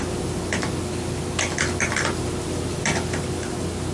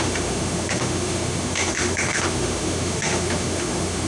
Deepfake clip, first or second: second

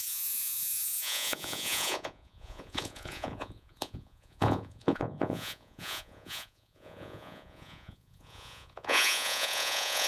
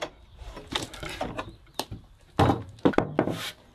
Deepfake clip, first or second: first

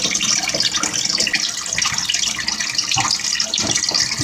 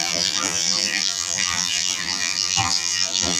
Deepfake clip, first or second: second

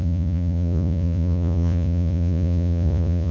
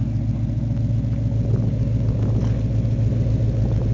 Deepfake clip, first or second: first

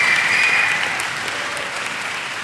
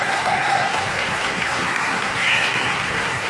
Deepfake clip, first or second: second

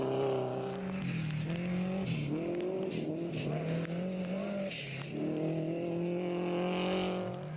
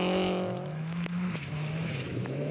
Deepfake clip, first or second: second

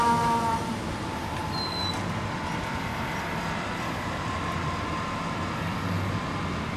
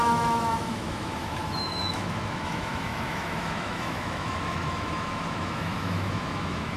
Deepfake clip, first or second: second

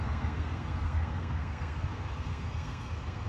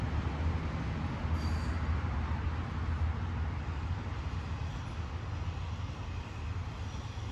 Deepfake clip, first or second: first